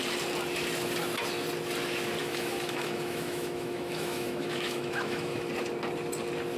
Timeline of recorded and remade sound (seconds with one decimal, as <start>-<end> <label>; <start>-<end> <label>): 0.0-2.2 recorded; 2.2-5.5 remade; 5.5-6.6 recorded